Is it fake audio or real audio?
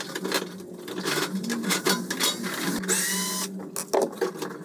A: real